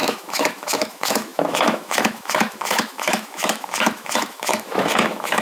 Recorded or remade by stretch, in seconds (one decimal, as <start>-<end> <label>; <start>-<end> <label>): 0.0-5.4 remade